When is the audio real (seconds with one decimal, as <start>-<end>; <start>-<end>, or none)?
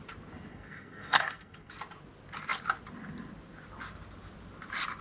0.0-0.5; 1.7-5.0